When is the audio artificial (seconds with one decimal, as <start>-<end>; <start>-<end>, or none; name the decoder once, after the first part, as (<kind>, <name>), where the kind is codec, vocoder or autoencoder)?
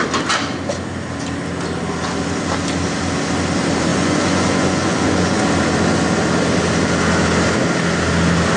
3.9-5.4 (vocoder, Vocos)